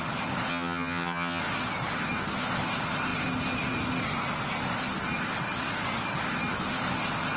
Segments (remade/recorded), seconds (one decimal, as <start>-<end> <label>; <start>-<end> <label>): 0.0-0.5 recorded; 0.5-1.4 remade; 1.4-7.4 recorded